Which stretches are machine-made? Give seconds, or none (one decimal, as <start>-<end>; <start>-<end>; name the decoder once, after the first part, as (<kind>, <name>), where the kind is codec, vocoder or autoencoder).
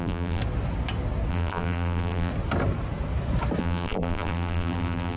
0.0-0.4 (vocoder, BigVGAN v2); 1.3-2.3; 3.6-5.2